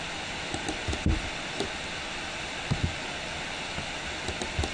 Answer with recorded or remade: recorded